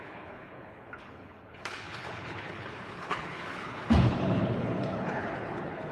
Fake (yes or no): yes